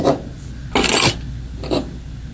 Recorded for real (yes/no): yes